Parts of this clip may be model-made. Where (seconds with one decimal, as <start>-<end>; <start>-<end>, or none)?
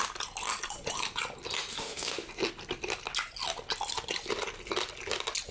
1.7-2.3